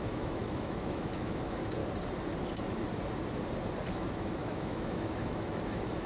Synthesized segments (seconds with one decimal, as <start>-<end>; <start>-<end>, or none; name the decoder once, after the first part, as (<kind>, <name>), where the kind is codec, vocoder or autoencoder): 0.0-1.8 (autoencoder, DAC-VAE); 3.9-6.1